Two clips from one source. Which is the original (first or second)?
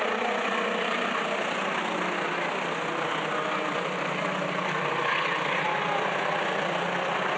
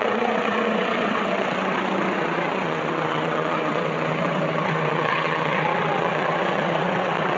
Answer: first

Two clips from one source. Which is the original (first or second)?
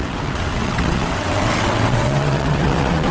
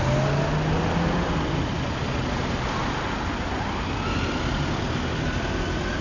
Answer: second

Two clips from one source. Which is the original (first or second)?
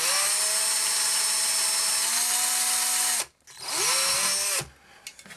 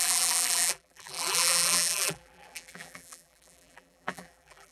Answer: first